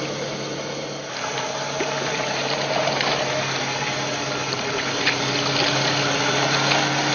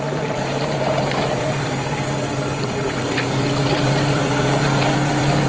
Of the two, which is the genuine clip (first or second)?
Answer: first